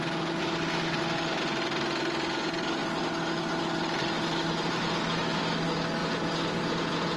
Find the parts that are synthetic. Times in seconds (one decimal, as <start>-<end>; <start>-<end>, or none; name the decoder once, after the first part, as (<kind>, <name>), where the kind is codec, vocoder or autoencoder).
6.0-7.2 (vocoder, Vocos)

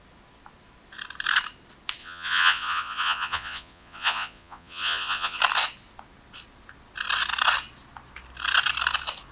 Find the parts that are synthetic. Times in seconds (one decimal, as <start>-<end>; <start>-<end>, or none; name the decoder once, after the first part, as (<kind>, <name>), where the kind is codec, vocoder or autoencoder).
2.0-5.4 (vocoder, Vocos)

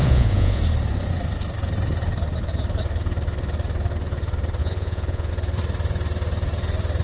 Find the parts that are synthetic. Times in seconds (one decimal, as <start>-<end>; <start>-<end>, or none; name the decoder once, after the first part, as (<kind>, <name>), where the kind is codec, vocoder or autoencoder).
0.0-0.6 (vocoder, Vocos); 4.6-5.3

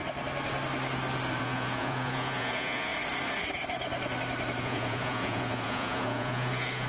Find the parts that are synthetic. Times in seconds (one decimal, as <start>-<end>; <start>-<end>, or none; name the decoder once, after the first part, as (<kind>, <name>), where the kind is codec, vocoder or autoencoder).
1.4-2.9 (vocoder, Vocos); 4.6-6.9

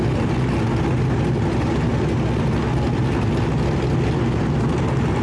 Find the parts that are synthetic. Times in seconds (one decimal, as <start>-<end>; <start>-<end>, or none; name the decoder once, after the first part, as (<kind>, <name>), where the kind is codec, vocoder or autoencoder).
none

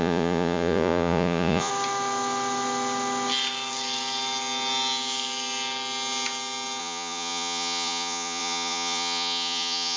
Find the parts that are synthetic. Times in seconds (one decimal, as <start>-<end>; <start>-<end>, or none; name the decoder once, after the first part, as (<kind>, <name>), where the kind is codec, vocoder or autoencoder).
0.0-1.7 (vocoder, Vocos); 6.8-10.0

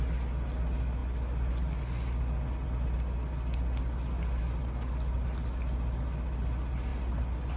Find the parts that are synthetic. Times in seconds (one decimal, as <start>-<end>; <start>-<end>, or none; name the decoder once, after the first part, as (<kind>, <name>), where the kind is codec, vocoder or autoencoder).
none